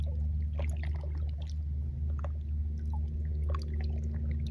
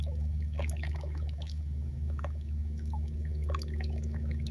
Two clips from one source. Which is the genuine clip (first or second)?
first